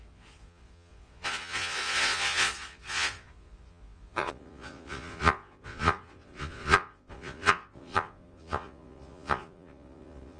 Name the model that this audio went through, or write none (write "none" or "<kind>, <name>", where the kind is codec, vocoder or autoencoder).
vocoder, Vocos